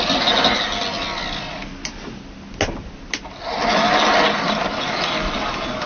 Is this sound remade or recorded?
recorded